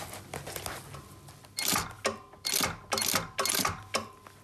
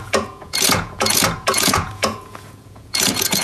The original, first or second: first